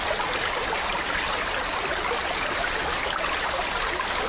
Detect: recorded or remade recorded